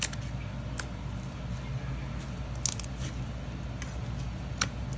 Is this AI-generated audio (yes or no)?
no